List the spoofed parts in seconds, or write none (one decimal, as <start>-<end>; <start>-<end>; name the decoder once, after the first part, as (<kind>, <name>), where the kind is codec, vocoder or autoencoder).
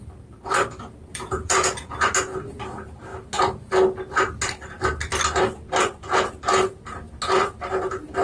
1.1-1.9 (vocoder, Vocos)